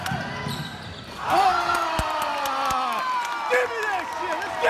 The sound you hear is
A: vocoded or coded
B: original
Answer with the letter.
B